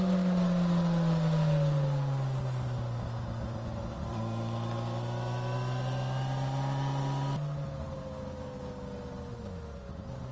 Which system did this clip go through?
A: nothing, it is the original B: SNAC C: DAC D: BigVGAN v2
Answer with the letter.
A